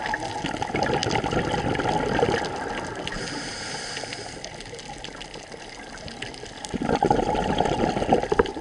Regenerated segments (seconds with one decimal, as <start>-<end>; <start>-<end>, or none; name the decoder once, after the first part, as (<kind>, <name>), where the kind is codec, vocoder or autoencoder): none